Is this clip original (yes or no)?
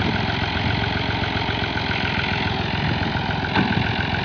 yes